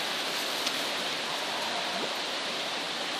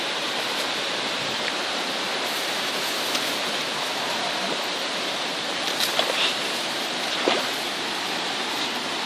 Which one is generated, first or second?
second